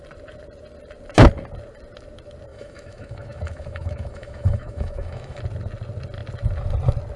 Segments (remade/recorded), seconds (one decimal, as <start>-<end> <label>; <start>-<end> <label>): 0.0-2.5 recorded; 2.5-5.4 remade; 5.4-7.2 recorded